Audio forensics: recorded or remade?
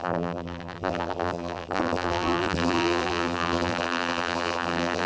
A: remade